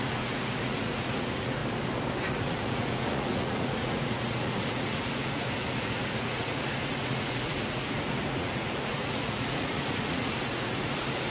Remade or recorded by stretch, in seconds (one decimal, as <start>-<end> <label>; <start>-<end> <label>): 0.0-1.6 remade; 1.6-2.3 recorded; 2.3-11.3 remade

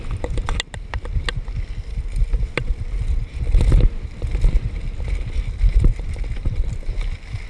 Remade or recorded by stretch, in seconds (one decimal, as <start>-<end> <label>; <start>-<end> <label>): 0.0-7.5 recorded

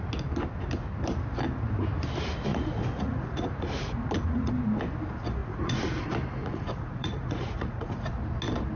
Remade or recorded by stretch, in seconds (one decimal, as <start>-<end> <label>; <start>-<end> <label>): 0.0-2.5 recorded; 2.5-4.5 remade; 4.5-5.4 recorded; 5.4-6.0 remade; 6.0-6.4 recorded; 6.4-8.1 remade; 8.1-8.8 recorded

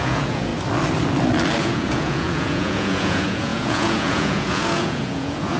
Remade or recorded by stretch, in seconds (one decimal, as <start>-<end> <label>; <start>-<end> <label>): 0.0-0.5 remade; 0.5-1.6 recorded; 1.6-5.6 remade

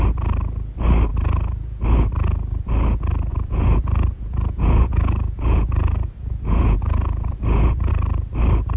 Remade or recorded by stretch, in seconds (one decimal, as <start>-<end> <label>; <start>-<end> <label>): 0.0-1.1 recorded; 1.1-1.8 remade; 1.8-3.3 recorded; 3.3-7.9 remade; 7.9-8.8 recorded

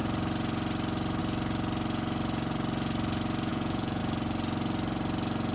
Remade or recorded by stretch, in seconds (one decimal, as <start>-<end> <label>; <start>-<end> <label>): 0.0-3.5 recorded; 3.5-4.0 remade; 4.0-5.5 recorded

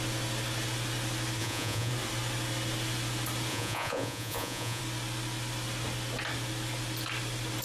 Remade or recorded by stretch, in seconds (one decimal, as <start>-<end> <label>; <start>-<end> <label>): 0.0-1.4 recorded; 1.4-1.9 remade; 1.9-3.5 recorded; 3.5-4.8 remade; 4.8-7.6 recorded

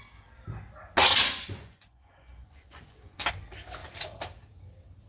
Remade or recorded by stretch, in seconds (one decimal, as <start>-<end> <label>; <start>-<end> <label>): 0.0-1.1 recorded; 1.1-3.3 remade; 3.3-5.1 recorded